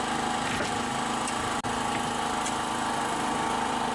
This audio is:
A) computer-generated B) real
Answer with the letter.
B